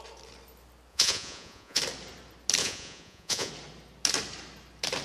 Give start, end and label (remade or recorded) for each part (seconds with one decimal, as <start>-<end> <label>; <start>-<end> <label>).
0.0-0.9 recorded; 0.9-1.8 remade; 1.8-2.6 recorded; 2.6-3.5 remade; 3.5-5.0 recorded